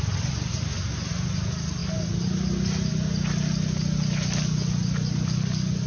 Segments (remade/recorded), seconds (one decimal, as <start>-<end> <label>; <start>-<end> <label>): 0.0-5.9 recorded

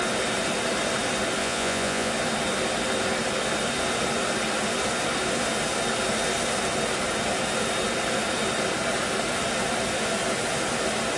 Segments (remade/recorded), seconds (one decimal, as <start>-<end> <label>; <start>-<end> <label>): 0.0-1.4 recorded; 1.4-2.1 remade; 2.1-11.2 recorded